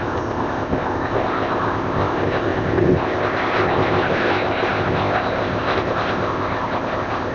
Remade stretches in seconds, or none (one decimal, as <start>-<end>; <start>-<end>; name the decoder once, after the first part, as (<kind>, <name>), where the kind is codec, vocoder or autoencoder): 0.0-7.3 (codec, ZipCodec)